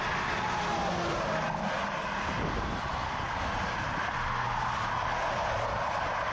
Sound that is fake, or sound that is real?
real